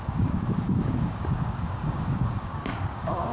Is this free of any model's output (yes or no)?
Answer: no